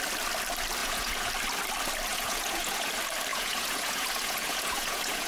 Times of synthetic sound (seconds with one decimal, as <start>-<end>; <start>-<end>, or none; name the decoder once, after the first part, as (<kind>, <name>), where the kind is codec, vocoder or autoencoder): 0.8-1.3 (vocoder, Vocos); 2.1-2.9; 3.3-5.3